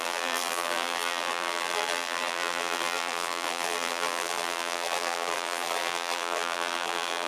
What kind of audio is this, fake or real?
fake